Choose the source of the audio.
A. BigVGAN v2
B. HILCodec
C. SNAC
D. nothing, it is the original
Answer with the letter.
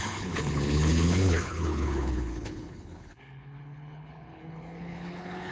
B